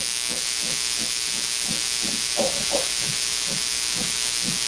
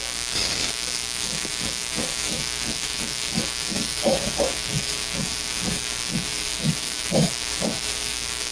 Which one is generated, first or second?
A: second